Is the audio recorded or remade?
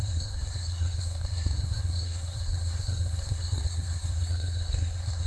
remade